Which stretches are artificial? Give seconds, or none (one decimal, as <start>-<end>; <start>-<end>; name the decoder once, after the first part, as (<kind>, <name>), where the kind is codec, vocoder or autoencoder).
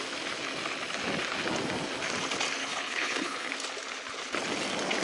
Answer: 2.6-3.5 (codec, HILCodec)